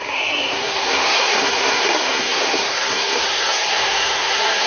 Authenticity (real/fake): fake